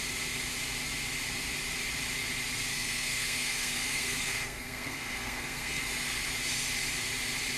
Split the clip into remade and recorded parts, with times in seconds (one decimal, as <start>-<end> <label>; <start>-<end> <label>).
0.0-2.7 recorded; 2.7-5.8 remade; 5.8-7.6 recorded

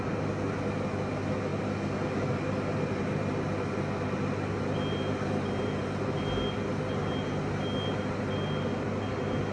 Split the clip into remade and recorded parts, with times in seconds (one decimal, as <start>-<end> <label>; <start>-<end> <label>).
0.0-9.5 recorded

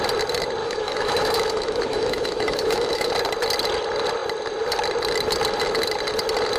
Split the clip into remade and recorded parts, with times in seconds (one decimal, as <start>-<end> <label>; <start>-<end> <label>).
0.0-0.6 recorded; 0.6-3.1 remade; 3.1-6.6 recorded

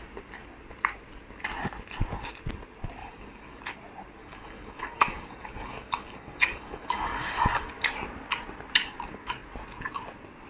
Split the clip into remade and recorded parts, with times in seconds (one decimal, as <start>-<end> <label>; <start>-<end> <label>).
0.0-3.0 recorded; 3.0-3.6 remade; 3.6-4.2 recorded; 4.2-7.7 remade; 7.7-10.5 recorded

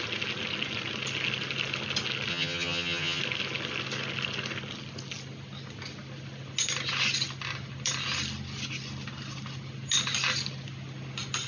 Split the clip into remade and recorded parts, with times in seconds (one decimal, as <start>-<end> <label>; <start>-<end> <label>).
0.0-2.3 recorded; 2.3-3.2 remade; 3.2-11.5 recorded

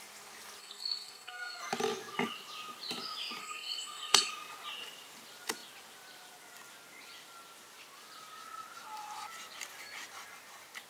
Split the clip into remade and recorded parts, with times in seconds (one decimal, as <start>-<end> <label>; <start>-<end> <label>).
0.0-0.6 recorded; 0.6-1.6 remade; 1.6-3.4 recorded; 3.4-4.3 remade; 4.3-10.9 recorded

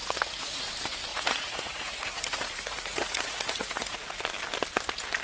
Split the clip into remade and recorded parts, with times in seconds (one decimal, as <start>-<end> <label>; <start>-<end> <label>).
0.0-0.7 remade; 0.7-1.1 recorded; 1.1-4.2 remade; 4.2-5.2 recorded